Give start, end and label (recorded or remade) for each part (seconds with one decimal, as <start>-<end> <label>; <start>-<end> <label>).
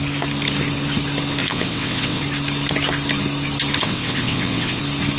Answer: 0.0-1.4 recorded; 1.4-2.2 remade; 2.2-3.8 recorded; 3.8-4.8 remade; 4.8-5.2 recorded